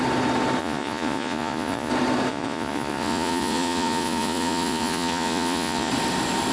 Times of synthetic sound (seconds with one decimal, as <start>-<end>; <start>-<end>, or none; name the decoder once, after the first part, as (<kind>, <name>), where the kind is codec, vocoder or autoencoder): 0.6-1.9 (vocoder, Vocos); 2.3-5.9